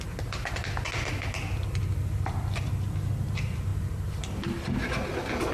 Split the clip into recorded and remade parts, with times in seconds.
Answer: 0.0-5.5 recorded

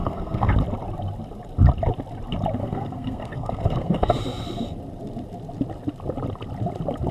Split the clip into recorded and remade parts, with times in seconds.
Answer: 0.0-0.5 remade; 0.5-2.6 recorded; 2.6-4.2 remade; 4.2-7.1 recorded

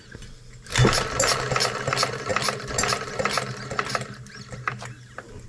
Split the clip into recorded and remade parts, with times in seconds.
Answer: 0.0-5.5 recorded

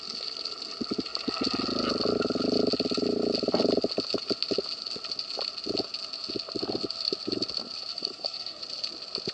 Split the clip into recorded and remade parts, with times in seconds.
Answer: 0.0-7.9 recorded; 7.9-8.6 remade; 8.6-9.3 recorded

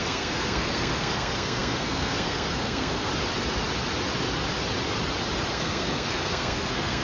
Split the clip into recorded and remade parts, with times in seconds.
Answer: 0.0-3.1 remade; 3.1-5.5 recorded; 5.5-7.0 remade

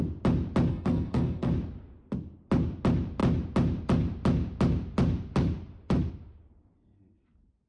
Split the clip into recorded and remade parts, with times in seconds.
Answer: 0.0-0.7 recorded; 0.7-1.5 remade; 1.5-7.7 recorded

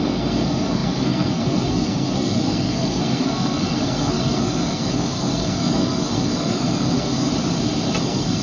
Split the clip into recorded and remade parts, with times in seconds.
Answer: 0.0-7.3 remade; 7.3-8.0 recorded; 8.0-8.4 remade